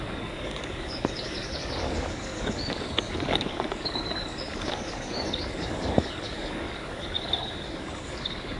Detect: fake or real fake